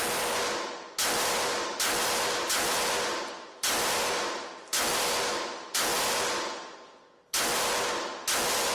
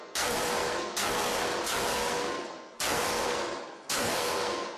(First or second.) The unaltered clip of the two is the first